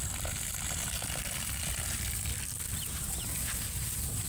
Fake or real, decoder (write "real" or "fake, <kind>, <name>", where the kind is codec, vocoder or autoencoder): real